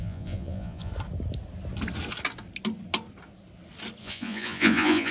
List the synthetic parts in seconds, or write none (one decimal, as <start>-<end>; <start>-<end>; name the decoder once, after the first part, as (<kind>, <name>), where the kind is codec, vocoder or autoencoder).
0.0-0.9 (vocoder, Vocos); 4.0-5.1